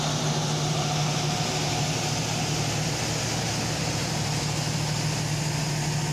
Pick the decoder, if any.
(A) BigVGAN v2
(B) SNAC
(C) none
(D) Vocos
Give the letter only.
C